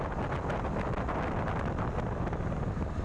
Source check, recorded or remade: recorded